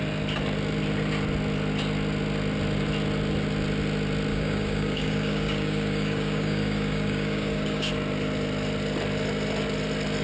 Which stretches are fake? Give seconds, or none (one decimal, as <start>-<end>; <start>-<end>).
4.3-7.9